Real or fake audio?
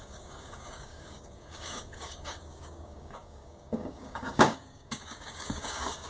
fake